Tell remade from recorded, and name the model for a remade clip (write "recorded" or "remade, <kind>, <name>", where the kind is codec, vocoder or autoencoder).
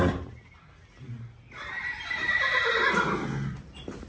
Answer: recorded